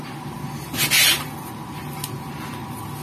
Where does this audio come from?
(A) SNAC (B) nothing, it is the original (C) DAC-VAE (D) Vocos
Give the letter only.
B